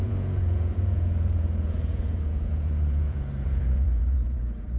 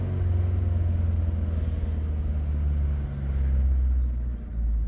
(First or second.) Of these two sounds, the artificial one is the first